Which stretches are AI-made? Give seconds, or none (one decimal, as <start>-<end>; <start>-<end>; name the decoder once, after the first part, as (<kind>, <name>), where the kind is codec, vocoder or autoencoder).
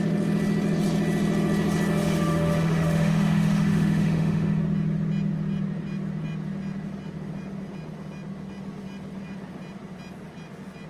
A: 2.0-4.6 (autoencoder, DAC-VAE)